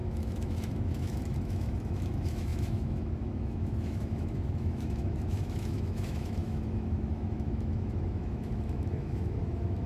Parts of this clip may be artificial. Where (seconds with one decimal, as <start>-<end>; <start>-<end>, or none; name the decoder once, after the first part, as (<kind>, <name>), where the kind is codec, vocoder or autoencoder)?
0.0-9.9 (autoencoder, DAC-VAE)